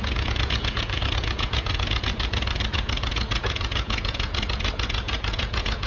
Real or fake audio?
fake